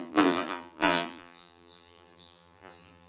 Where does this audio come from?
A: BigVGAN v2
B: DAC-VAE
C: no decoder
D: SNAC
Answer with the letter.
A